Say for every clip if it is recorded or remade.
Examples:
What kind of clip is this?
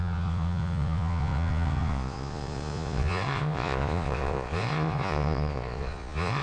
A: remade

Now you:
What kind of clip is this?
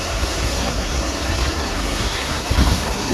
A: remade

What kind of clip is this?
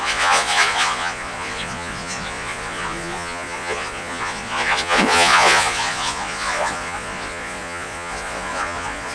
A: remade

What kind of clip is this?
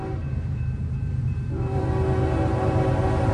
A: remade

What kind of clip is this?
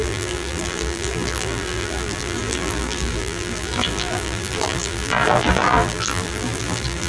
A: remade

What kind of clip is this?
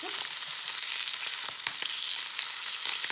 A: recorded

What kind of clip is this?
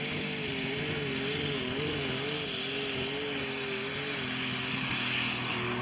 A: recorded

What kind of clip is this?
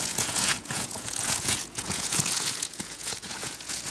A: remade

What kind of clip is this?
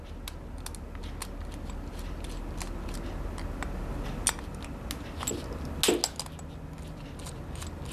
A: recorded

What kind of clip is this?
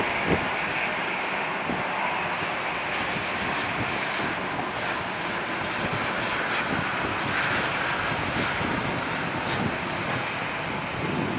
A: recorded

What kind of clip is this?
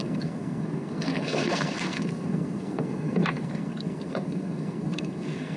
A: remade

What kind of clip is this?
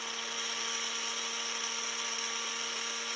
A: recorded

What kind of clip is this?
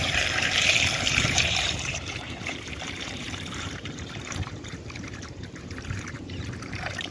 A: remade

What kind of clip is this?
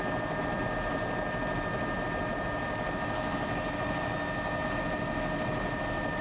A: recorded